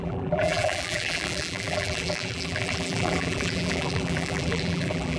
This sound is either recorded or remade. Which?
remade